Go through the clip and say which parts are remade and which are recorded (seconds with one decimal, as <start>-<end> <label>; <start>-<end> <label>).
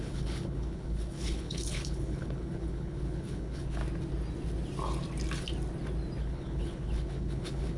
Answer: 0.0-3.8 remade; 3.8-6.2 recorded; 6.2-7.8 remade